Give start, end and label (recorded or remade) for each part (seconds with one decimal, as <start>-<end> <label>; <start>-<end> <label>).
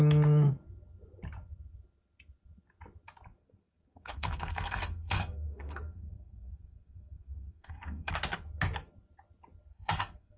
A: 0.0-3.4 recorded; 3.4-8.1 remade; 8.1-9.7 recorded; 9.7-10.4 remade